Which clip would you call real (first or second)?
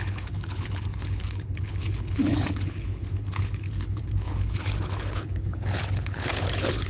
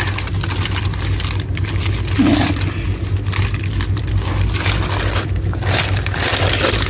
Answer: second